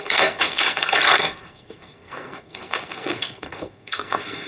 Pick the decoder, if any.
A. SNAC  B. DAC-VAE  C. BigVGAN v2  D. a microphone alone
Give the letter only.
A